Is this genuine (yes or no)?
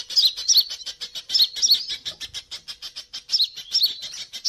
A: yes